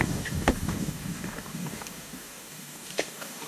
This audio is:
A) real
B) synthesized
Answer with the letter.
B